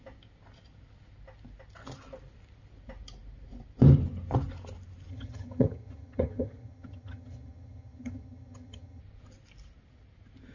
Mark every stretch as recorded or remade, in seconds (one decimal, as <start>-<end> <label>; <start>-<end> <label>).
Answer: 0.0-5.1 recorded; 5.1-9.0 remade; 9.0-10.5 recorded